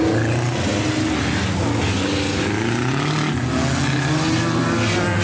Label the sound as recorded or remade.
recorded